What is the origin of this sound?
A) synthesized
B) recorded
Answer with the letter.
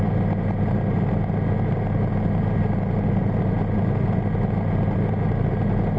B